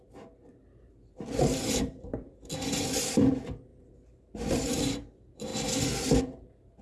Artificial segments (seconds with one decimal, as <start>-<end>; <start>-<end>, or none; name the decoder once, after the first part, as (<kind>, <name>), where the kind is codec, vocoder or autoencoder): 0.0-2.1 (vocoder, BigVGAN v2); 2.8-5.5; 6.2-6.8